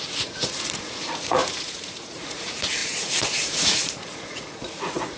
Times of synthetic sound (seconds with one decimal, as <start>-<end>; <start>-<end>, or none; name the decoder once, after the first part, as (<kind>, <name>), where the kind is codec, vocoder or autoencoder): 0.0-5.2 (vocoder, Vocos)

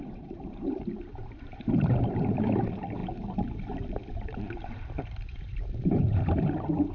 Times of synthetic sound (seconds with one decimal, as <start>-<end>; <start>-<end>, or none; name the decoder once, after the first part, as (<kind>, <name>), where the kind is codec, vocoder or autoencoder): 0.0-3.0 (vocoder, BigVGAN v2); 3.5-6.9

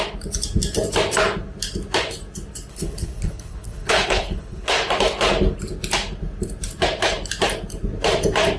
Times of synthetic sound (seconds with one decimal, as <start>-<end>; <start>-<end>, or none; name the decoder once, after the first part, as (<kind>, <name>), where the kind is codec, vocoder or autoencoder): 2.7-4.7 (codec, HILCodec)